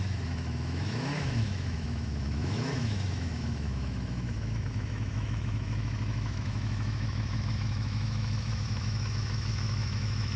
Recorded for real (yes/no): no